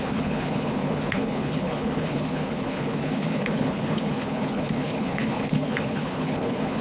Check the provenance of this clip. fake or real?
fake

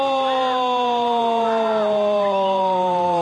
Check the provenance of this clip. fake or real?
fake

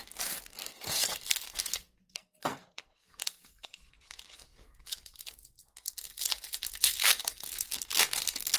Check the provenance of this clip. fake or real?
fake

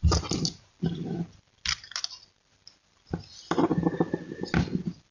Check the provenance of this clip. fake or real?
real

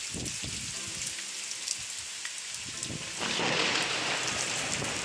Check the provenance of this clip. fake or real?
real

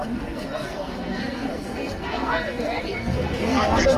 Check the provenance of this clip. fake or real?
fake